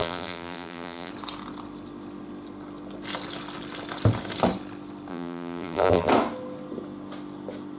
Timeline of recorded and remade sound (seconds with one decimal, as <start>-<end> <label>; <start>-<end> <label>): 0.0-1.1 remade; 1.1-5.1 recorded; 5.1-6.1 remade; 6.1-7.8 recorded